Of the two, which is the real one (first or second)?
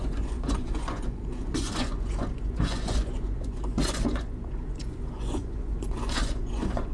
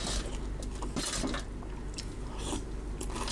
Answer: second